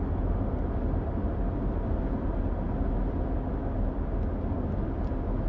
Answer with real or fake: real